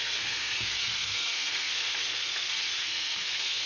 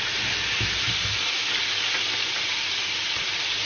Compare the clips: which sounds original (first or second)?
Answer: second